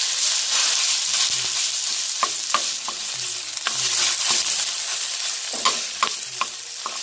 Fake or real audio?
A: real